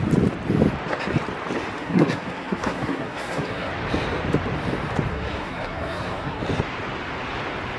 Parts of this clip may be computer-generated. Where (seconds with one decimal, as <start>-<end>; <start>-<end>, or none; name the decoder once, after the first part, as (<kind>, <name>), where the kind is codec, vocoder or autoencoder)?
1.8-3.7 (codec, SNAC); 5.1-6.4